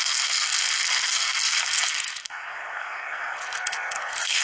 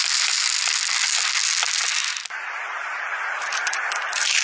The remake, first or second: first